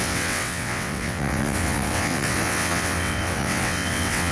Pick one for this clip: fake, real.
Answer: fake